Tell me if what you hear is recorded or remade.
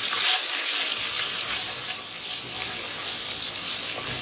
recorded